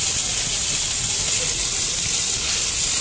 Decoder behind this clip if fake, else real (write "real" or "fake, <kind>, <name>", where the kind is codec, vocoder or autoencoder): real